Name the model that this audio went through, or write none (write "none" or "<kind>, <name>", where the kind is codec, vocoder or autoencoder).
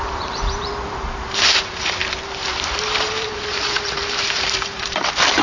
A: vocoder, BigVGAN v2